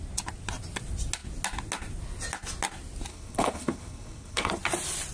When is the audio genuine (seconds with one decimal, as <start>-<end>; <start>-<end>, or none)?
0.0-3.1; 4.5-5.1